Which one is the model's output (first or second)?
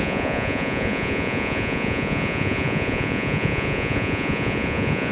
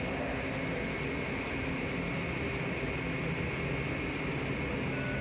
first